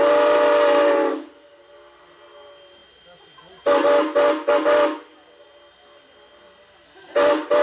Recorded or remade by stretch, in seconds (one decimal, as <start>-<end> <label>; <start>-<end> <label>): 0.0-7.6 recorded